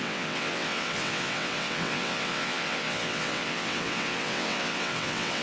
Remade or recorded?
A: remade